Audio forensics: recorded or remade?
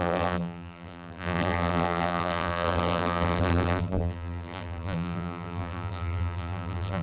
remade